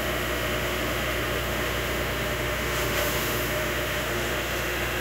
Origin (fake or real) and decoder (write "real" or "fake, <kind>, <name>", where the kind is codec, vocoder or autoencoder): fake, autoencoder, DAC-VAE